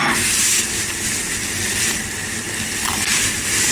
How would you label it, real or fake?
real